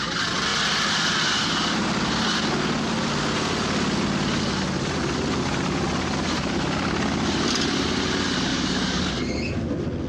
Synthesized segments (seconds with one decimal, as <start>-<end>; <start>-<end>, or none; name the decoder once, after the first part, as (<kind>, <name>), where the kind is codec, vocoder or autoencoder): 8.5-9.1 (codec, DAC)